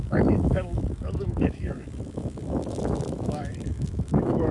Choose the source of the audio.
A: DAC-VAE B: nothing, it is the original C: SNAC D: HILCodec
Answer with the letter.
A